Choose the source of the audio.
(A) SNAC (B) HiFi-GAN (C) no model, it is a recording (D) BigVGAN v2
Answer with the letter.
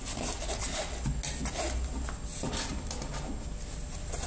C